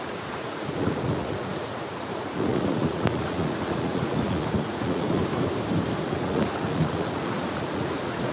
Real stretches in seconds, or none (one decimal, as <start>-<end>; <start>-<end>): 5.2-6.0